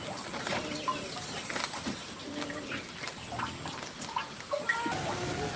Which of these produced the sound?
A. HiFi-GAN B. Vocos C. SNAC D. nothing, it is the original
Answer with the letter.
D